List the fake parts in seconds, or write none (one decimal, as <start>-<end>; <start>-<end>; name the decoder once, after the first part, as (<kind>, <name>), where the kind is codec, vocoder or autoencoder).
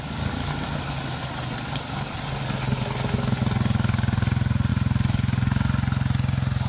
none